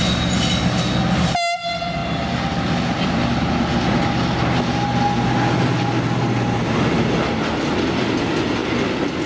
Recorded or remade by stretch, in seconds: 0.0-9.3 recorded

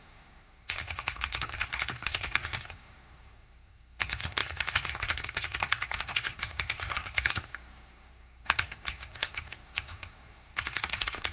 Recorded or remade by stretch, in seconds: 0.0-11.3 remade

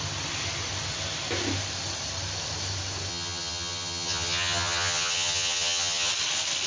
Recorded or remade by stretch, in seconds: 0.0-3.1 recorded; 3.1-6.1 remade; 6.1-6.7 recorded

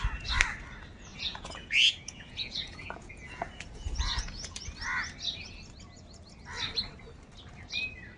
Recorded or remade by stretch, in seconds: 0.0-1.1 recorded; 1.1-4.7 remade; 4.7-8.2 recorded

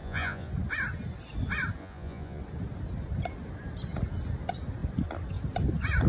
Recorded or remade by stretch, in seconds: 0.0-0.5 remade; 0.5-1.8 recorded; 1.8-2.4 remade; 2.4-6.1 recorded

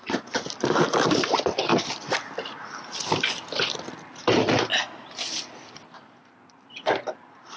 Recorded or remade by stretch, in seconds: 0.0-7.6 recorded